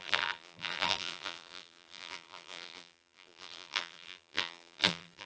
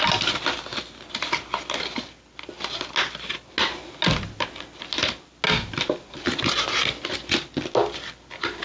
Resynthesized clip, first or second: first